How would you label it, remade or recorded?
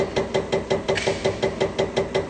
recorded